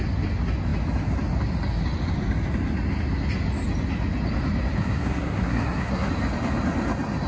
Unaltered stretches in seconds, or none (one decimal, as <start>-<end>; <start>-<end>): 0.0-4.8; 6.1-7.3

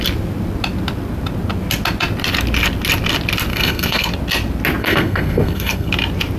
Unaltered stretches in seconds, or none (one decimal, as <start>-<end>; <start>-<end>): 0.0-3.5; 4.1-4.8; 5.9-6.4

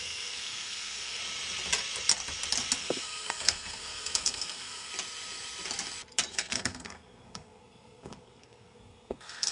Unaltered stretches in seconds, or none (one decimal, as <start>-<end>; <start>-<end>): 1.2-2.8; 4.9-6.3